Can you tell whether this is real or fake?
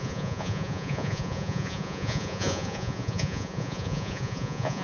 fake